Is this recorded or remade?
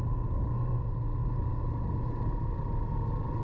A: recorded